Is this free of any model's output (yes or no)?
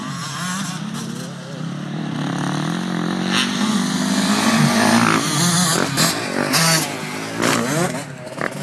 yes